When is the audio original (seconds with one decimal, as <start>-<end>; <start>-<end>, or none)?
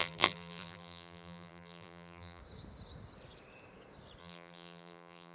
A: 2.4-4.2